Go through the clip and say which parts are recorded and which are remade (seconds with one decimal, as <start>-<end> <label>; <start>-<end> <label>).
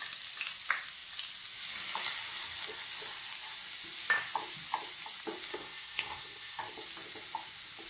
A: 0.0-5.5 recorded; 5.5-6.6 remade; 6.6-7.9 recorded